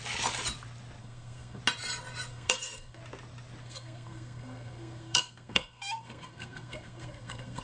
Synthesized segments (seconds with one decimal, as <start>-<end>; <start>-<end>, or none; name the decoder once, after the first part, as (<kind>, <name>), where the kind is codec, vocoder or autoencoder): 1.0-1.6 (codec, SNAC); 2.3-3.0; 3.6-7.6